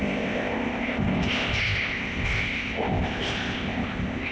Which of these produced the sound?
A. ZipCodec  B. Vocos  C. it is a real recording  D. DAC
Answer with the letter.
A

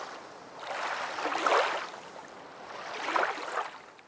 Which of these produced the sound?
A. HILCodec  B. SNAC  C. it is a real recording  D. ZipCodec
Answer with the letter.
C